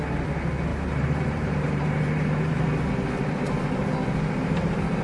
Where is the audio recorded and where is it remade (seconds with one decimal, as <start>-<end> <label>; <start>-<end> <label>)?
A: 0.0-0.7 recorded; 0.7-2.9 remade; 2.9-5.0 recorded